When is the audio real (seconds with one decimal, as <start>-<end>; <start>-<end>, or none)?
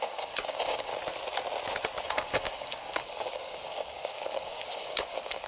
0.9-2.0